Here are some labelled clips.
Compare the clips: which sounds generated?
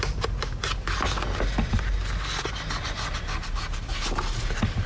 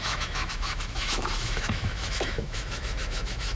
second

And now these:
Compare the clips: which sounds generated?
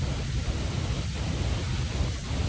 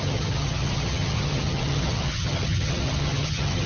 second